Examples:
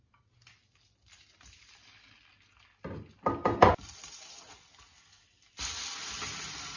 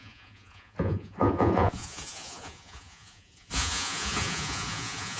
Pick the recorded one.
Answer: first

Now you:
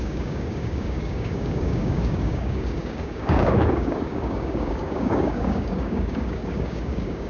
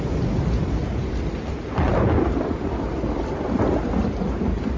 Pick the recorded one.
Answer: second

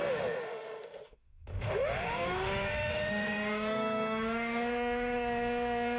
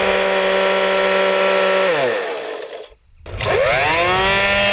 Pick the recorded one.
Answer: second